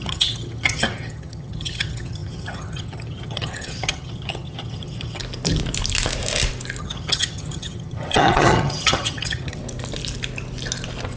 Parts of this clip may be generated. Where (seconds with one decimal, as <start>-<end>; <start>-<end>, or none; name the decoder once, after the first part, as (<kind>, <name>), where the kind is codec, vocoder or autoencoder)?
0.0-5.2 (vocoder, HiFi-GAN); 6.8-9.6